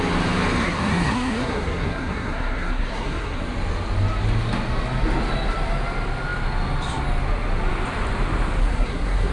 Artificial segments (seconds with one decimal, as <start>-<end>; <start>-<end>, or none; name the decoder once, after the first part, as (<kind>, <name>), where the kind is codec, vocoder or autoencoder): 0.6-3.4 (codec, SNAC); 8.6-9.3